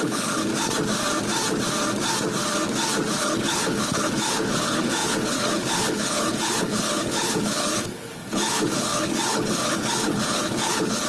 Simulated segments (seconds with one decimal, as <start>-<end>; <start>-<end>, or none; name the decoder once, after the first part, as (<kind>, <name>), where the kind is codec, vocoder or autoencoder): 0.0-0.5 (codec, HILCodec); 3.2-11.1